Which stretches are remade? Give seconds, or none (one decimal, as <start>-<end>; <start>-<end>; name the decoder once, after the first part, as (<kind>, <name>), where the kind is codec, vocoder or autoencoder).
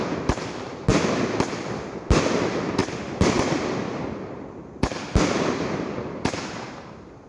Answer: 2.8-6.7 (vocoder, BigVGAN v2)